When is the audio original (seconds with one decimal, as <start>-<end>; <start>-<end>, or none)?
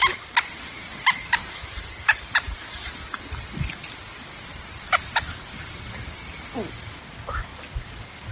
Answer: 0.0-1.4; 3.2-8.3